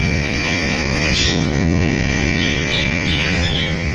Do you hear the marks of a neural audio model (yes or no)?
yes